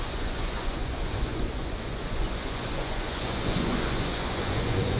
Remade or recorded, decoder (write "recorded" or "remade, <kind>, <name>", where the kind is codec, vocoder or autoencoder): remade, vocoder, Vocos